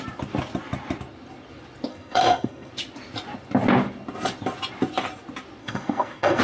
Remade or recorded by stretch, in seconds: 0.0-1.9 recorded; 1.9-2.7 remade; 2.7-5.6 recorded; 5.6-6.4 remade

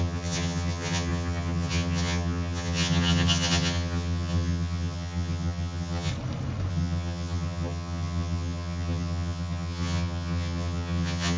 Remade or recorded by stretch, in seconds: 0.0-6.1 remade; 6.1-6.7 recorded; 6.7-11.4 remade

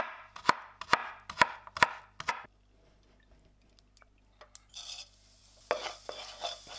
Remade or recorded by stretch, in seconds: 0.0-6.8 recorded

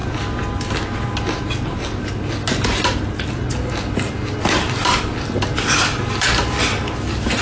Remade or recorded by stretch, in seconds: 0.0-7.4 recorded

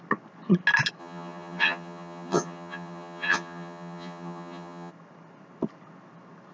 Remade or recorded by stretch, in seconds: 0.0-1.0 recorded; 1.0-4.9 remade; 4.9-6.5 recorded

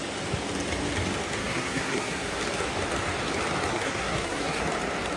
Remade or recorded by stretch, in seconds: 0.0-1.4 recorded; 1.4-2.4 remade; 2.4-3.7 recorded; 3.7-4.6 remade; 4.6-5.2 recorded

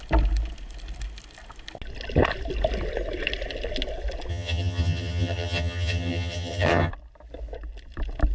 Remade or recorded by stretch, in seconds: 0.0-4.3 recorded; 4.3-6.9 remade; 6.9-8.3 recorded

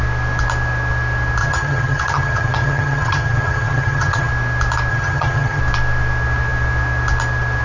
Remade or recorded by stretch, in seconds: 0.0-1.4 recorded; 1.4-4.3 remade; 4.3-4.9 recorded; 4.9-5.6 remade; 5.6-7.6 recorded